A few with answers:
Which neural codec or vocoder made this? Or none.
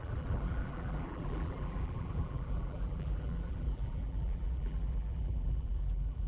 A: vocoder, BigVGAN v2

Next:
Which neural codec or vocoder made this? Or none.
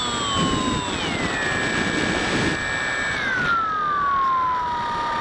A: none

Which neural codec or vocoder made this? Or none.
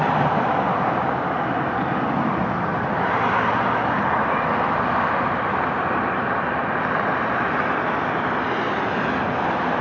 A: none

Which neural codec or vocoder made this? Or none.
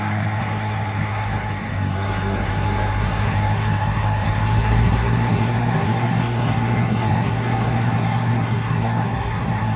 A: codec, SNAC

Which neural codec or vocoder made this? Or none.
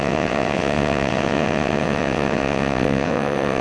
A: vocoder, WaveNeXt